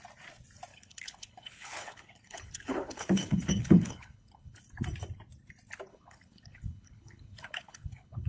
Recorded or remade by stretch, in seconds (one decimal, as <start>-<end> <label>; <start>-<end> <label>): 0.0-0.7 recorded; 0.7-4.6 remade; 4.6-5.9 recorded; 5.9-8.3 remade